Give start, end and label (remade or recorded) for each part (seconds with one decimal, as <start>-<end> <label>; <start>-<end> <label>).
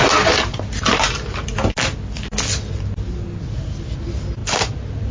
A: 0.0-5.1 recorded